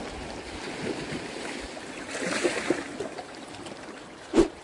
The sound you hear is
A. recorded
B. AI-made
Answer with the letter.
B